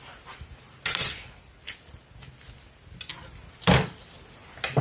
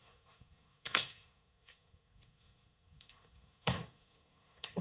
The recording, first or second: first